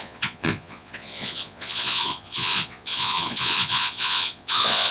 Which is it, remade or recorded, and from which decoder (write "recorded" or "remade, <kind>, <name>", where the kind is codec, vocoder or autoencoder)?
remade, vocoder, Vocos